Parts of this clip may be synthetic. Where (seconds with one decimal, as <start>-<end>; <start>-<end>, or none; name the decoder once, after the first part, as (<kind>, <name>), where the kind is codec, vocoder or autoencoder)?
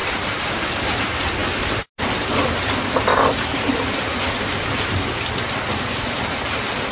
none